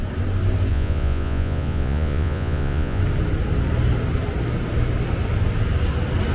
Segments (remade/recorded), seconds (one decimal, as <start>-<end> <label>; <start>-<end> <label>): 0.0-0.7 recorded; 0.7-3.0 remade; 3.0-6.3 recorded